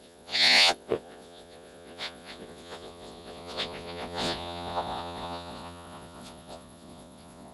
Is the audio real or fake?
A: fake